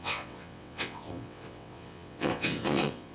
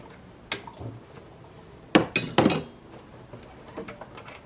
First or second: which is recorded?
second